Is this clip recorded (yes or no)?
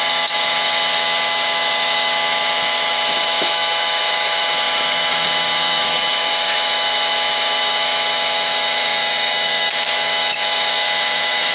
no